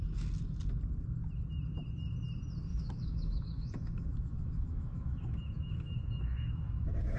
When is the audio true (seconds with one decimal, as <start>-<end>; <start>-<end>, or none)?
0.0-2.7